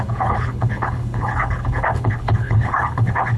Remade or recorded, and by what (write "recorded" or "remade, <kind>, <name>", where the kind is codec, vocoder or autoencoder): remade, codec, HILCodec